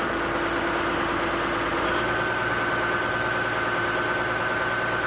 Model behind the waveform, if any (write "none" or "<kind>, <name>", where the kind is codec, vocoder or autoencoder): none